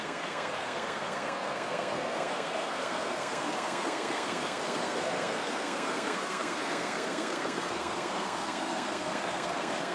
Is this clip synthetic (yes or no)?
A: yes